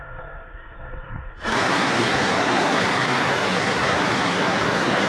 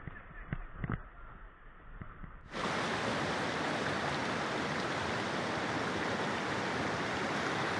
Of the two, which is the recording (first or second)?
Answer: second